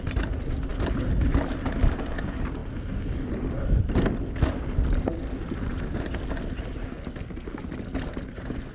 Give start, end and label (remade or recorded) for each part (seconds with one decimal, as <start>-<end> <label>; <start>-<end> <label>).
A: 0.0-8.7 recorded